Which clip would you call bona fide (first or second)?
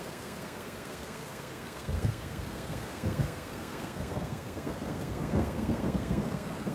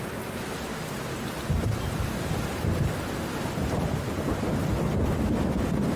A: second